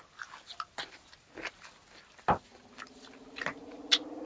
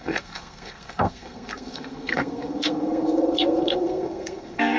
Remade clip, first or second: second